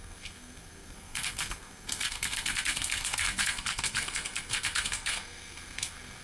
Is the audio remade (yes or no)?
yes